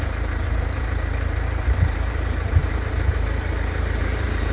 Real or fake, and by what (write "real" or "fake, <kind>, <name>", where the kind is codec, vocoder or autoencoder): fake, vocoder, BigVGAN v2